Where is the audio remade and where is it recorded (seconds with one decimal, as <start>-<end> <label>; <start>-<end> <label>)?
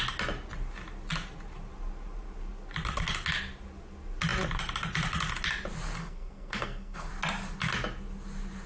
0.0-6.0 recorded; 6.0-7.1 remade; 7.1-8.7 recorded